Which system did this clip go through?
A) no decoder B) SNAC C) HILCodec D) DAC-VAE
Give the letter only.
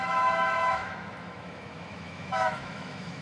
D